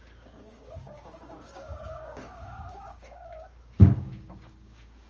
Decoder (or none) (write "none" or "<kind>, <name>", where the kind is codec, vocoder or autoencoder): codec, DAC